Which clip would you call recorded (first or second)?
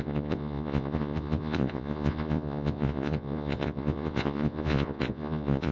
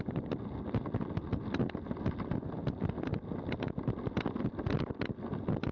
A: second